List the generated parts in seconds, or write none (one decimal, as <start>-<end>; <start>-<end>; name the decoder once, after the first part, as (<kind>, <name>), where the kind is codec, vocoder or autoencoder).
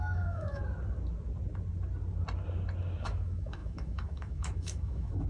0.0-0.6 (autoencoder, DAC-VAE); 3.0-5.3